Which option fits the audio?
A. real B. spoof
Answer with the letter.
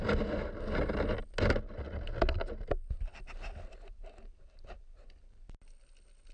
A